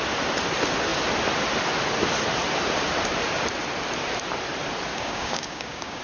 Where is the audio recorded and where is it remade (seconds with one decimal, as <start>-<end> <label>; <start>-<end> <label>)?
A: 0.0-4.9 recorded; 4.9-6.0 remade